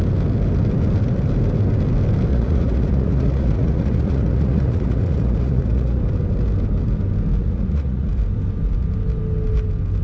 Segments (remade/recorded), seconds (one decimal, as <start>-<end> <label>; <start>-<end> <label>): 0.0-2.3 recorded; 2.3-6.0 remade; 6.0-7.4 recorded; 7.4-8.1 remade; 8.1-10.0 recorded